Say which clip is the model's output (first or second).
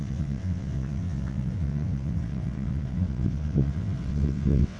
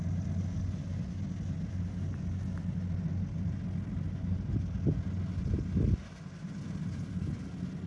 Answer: first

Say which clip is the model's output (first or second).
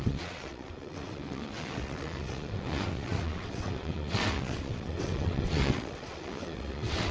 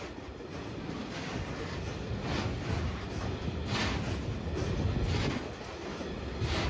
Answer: first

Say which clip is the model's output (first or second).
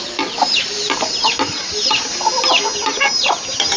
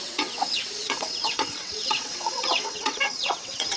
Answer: second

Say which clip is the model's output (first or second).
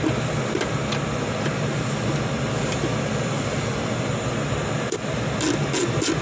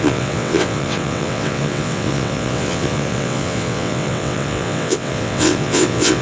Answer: second